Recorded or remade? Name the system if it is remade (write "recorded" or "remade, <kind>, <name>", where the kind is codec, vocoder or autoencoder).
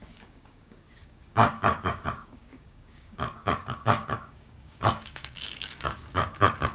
remade, codec, DAC